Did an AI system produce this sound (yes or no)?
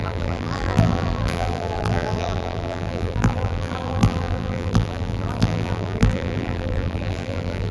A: yes